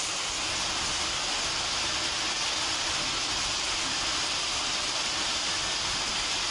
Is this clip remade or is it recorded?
recorded